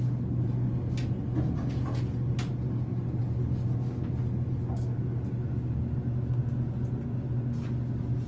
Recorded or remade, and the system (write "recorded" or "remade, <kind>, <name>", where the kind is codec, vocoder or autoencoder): recorded